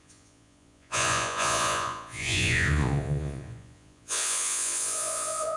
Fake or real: fake